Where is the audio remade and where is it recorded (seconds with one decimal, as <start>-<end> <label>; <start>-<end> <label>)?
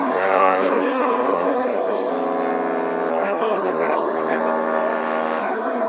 0.0-2.1 remade; 2.1-3.1 recorded; 3.1-4.4 remade; 4.4-5.4 recorded; 5.4-5.9 remade